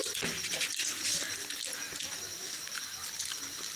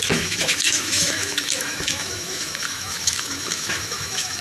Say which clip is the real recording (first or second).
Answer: first